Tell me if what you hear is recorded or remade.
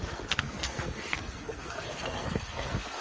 remade